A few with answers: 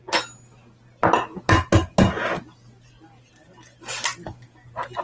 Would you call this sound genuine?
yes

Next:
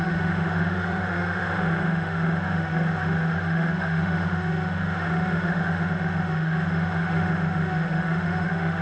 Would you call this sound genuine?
no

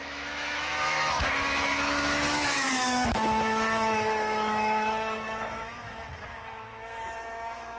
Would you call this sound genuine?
no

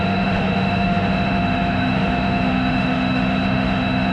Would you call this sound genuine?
no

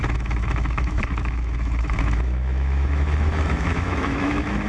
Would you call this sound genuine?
no